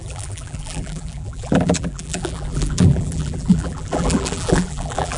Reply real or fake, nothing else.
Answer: fake